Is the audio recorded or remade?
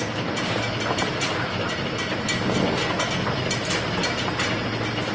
recorded